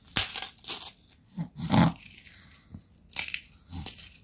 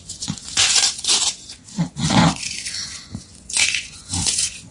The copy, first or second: second